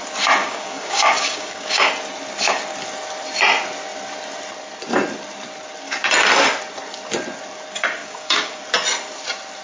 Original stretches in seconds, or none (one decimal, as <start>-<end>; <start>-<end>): 0.0-0.4; 1.9-8.0; 8.6-9.6